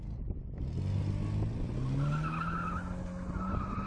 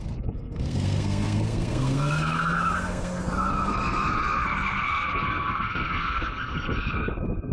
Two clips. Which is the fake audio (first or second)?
second